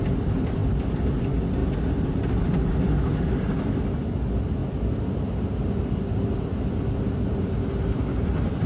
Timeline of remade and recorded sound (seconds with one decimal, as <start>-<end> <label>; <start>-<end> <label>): 0.0-8.7 recorded